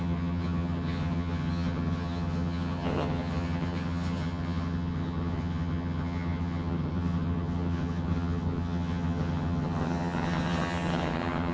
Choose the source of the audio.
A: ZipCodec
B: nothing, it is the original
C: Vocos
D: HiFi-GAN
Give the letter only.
D